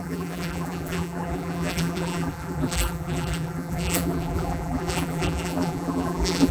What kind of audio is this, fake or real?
fake